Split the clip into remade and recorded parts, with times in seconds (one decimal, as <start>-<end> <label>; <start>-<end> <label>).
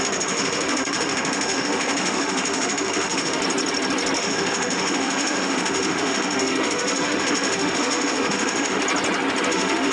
0.0-3.4 remade; 3.4-4.2 recorded; 4.2-8.8 remade; 8.8-9.5 recorded; 9.5-9.9 remade